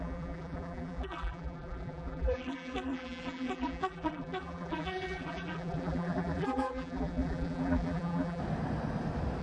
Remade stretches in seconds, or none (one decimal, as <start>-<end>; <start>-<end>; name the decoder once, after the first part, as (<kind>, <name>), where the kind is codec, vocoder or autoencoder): 0.0-8.4 (vocoder, BigVGAN v2)